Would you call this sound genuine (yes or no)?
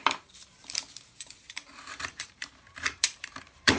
no